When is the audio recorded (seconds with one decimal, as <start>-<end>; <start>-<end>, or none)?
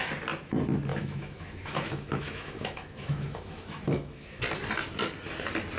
0.0-0.9; 4.4-5.8